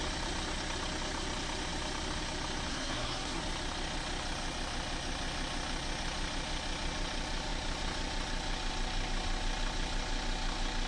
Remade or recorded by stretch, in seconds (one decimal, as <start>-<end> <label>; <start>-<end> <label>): 0.0-2.7 recorded; 2.7-3.4 remade; 3.4-10.9 recorded